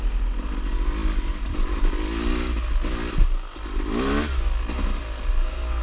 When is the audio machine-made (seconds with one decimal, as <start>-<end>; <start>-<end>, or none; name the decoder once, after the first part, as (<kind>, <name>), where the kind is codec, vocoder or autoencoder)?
none